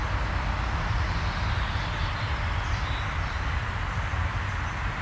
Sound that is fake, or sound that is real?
real